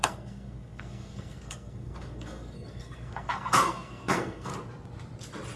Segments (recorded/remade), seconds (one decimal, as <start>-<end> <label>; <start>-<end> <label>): 0.0-4.5 remade; 4.5-5.6 recorded

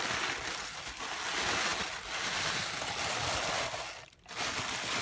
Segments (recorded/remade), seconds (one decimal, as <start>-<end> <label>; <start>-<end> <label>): 0.0-5.0 recorded

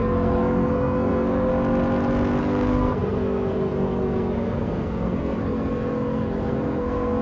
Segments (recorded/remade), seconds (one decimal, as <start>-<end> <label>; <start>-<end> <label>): 0.0-1.5 remade; 1.5-2.4 recorded; 2.4-7.2 remade

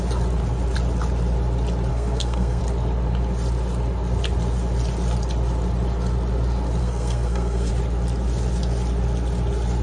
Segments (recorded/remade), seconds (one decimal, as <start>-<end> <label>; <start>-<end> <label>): 0.0-1.9 recorded; 1.9-2.6 remade; 2.6-6.8 recorded; 6.8-7.7 remade; 7.7-9.8 recorded